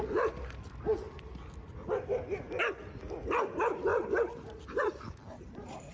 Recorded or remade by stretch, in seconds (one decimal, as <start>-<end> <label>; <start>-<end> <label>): 0.0-5.9 recorded